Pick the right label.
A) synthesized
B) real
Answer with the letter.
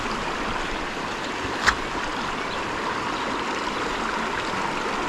B